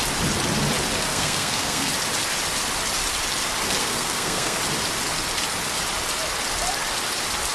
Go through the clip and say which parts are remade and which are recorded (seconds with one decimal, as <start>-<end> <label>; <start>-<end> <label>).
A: 0.0-1.1 recorded; 1.1-1.9 remade; 1.9-3.8 recorded; 3.8-4.6 remade; 4.6-7.5 recorded